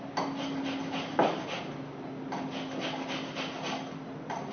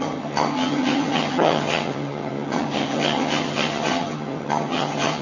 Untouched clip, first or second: first